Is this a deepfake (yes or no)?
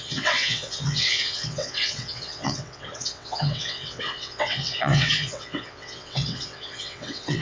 yes